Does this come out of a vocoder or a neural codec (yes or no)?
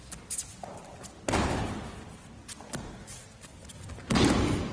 no